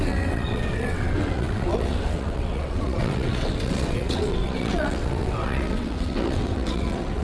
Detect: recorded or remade remade